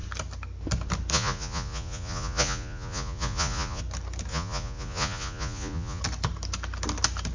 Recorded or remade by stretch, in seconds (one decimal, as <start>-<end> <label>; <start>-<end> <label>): 0.0-1.1 recorded; 1.1-3.8 remade; 3.8-4.3 recorded; 4.3-6.0 remade; 6.0-7.3 recorded